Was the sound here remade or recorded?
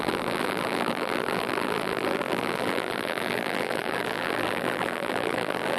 remade